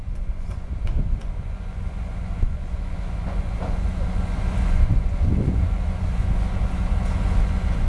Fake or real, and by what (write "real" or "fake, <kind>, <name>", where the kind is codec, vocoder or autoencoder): fake, vocoder, Vocos